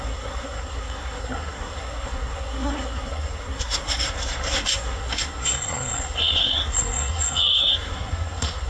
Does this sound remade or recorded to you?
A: remade